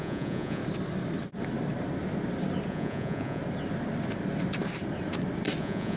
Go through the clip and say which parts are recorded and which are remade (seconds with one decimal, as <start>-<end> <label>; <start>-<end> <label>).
0.0-0.6 remade; 0.6-2.7 recorded; 2.7-3.4 remade; 3.4-5.6 recorded; 5.6-6.0 remade